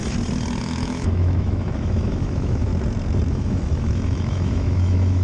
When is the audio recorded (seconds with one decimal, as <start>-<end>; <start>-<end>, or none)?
0.0-0.6; 2.7-3.3